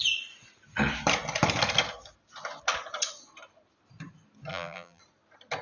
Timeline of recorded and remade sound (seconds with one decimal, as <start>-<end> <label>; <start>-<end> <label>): 0.0-4.5 recorded; 4.5-5.0 remade; 5.0-5.6 recorded